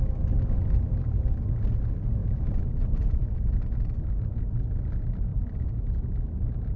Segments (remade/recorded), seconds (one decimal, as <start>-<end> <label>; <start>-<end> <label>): 0.0-2.2 recorded; 2.2-3.5 remade; 3.5-5.3 recorded; 5.3-6.0 remade; 6.0-6.8 recorded